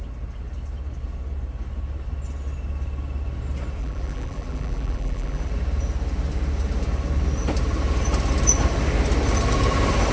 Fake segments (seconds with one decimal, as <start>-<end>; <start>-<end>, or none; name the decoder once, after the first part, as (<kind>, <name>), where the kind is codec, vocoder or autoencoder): 3.8-5.5 (vocoder, BigVGAN v2)